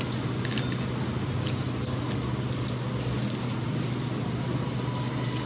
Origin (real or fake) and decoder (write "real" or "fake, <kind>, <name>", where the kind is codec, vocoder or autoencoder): real